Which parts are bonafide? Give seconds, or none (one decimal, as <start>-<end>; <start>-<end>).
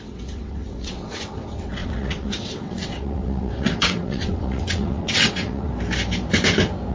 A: 5.7-6.9